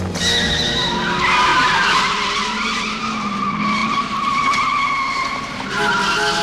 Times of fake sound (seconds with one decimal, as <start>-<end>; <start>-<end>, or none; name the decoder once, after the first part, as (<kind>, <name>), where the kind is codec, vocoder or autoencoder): 1.5-3.0 (vocoder, BigVGAN v2); 3.8-4.9